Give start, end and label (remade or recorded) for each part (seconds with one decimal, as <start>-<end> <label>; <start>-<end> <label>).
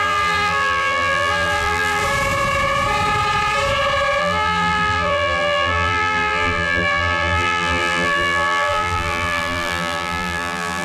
0.0-2.0 remade; 2.0-4.2 recorded; 4.2-10.8 remade